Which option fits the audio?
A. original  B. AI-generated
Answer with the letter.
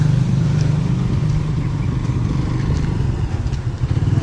B